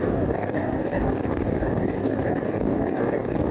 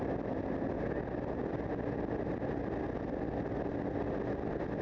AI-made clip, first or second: first